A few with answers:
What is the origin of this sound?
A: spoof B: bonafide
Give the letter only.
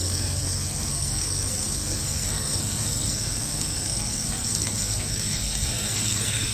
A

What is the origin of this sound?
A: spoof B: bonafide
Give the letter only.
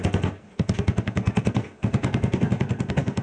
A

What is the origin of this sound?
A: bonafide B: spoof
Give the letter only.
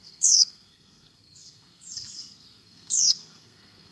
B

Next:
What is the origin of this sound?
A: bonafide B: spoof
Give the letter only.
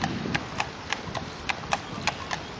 A